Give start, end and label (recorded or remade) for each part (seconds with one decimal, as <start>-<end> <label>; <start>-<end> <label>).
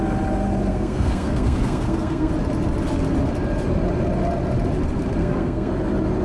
0.0-0.7 recorded; 0.7-2.3 remade; 2.3-5.2 recorded; 5.2-5.7 remade; 5.7-6.2 recorded